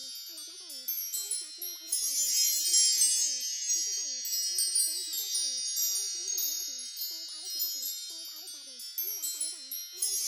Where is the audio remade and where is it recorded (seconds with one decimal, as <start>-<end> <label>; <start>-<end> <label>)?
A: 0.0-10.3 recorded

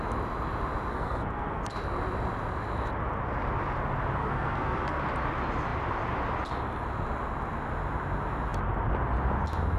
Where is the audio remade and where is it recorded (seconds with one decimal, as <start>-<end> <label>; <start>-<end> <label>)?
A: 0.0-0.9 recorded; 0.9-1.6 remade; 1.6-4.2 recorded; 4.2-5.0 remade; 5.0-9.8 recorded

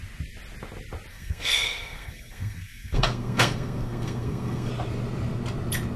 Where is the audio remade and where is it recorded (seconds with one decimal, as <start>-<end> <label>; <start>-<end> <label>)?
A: 0.0-1.1 recorded; 1.1-4.7 remade; 4.7-6.0 recorded